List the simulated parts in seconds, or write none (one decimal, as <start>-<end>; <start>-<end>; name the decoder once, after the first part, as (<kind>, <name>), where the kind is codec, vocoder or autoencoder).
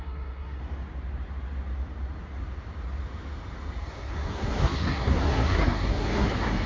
0.0-0.6 (codec, SNAC); 3.8-6.7